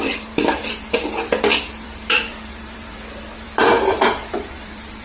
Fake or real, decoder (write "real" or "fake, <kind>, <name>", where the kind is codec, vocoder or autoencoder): fake, vocoder, BigVGAN v2